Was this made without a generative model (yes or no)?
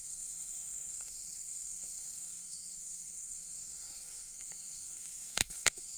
no